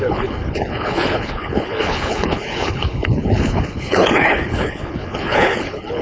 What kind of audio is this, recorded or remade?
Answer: remade